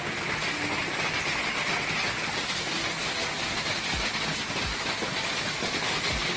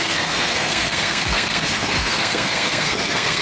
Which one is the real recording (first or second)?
first